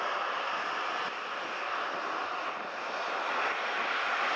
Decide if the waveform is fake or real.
real